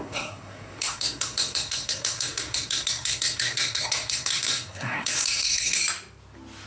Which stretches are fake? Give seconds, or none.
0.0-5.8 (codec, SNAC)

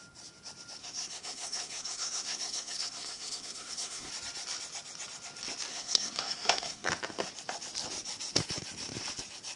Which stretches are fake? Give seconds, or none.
0.8-4.1 (codec, SNAC); 5.7-6.9

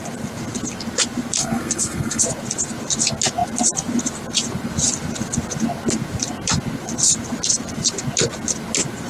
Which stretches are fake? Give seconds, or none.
1.4-2.2 (codec, SNAC)

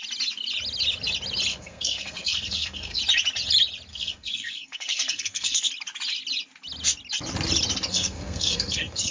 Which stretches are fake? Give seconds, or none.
1.5-3.0 (codec, SNAC); 3.9-5.7; 7.9-9.1